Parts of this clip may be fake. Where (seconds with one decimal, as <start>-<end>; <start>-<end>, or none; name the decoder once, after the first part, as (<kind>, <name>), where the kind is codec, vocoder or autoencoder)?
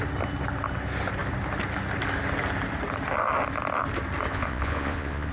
4.3-5.3 (vocoder, Vocos)